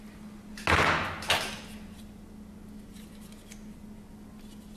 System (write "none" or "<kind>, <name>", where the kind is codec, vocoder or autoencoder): none